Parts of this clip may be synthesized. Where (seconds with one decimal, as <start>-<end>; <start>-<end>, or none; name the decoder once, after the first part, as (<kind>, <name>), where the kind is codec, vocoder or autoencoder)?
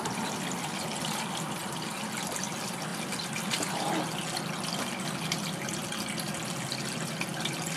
2.9-4.0 (vocoder, BigVGAN v2)